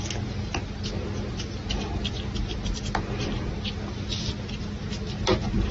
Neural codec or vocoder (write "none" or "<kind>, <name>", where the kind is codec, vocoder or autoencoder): none